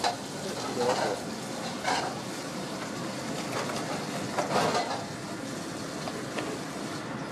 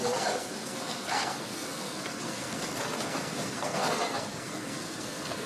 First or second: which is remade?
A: second